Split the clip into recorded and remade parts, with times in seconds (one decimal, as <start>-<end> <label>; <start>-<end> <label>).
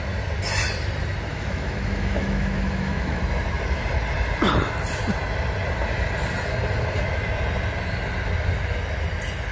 0.0-1.3 recorded; 1.3-3.2 remade; 3.2-9.5 recorded